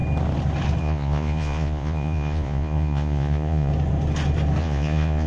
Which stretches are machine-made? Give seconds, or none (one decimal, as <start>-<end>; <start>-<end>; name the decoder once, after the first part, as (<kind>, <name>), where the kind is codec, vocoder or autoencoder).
0.8-3.7 (vocoder, Vocos); 4.6-5.3